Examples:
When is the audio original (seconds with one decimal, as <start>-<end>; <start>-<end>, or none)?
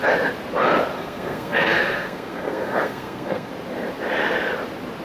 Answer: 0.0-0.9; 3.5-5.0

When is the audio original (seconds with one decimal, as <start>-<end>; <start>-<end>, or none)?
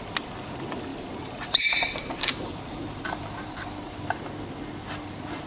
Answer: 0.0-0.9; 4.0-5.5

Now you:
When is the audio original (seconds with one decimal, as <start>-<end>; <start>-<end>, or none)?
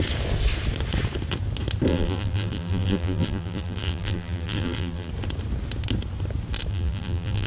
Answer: 0.0-1.9; 5.1-6.7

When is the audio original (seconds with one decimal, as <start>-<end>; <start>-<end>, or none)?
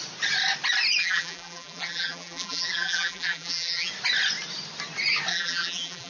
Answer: 0.0-1.0; 3.9-5.3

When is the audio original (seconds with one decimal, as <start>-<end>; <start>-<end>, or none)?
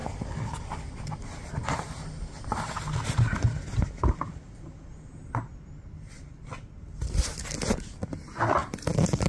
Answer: 0.0-9.3